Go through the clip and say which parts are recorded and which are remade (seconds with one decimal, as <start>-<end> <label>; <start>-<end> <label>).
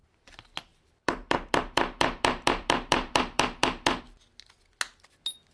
0.0-0.7 recorded; 0.7-4.0 remade; 4.0-5.5 recorded